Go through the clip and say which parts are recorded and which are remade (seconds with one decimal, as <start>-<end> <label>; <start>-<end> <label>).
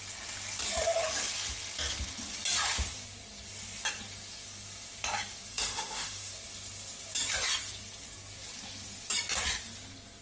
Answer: 0.0-5.5 recorded; 5.5-6.3 remade; 6.3-10.2 recorded